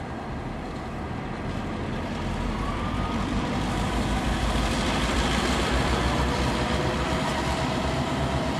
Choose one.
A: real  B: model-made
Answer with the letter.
B